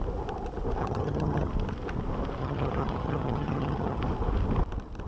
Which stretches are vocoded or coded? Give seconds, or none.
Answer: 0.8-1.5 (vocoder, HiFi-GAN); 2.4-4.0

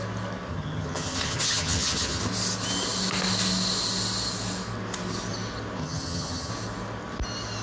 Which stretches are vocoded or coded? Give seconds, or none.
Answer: 0.5-2.2 (vocoder, HiFi-GAN); 5.8-6.5

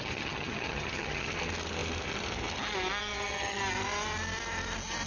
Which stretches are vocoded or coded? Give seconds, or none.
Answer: 0.0-1.3 (vocoder, HiFi-GAN); 3.0-3.6

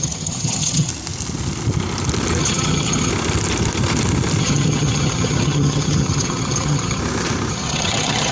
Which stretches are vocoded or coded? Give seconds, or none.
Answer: 0.0-0.9 (vocoder, HiFi-GAN); 2.4-3.1; 4.4-7.0; 7.5-8.3

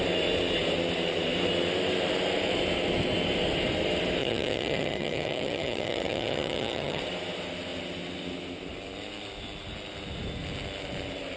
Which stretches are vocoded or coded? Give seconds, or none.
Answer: 4.2-7.0 (vocoder, HiFi-GAN)

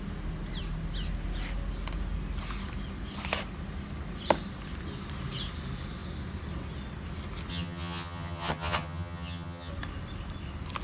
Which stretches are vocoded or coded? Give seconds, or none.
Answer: 7.5-9.7 (vocoder, HiFi-GAN)

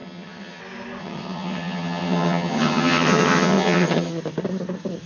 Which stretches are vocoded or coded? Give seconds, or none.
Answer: 0.0-0.6 (vocoder, HiFi-GAN); 1.0-4.1